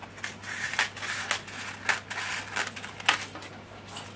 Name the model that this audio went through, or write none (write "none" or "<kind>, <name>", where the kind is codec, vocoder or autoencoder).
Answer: none